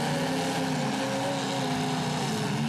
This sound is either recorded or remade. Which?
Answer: recorded